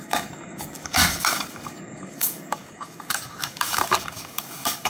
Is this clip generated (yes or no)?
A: yes